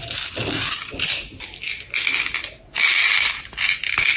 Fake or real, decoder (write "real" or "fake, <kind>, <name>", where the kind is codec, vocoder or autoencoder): real